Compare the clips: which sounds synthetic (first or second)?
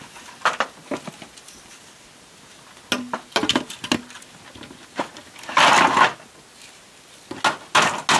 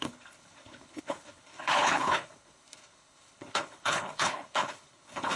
second